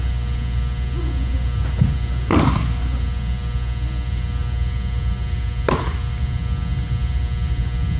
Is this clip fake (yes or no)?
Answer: no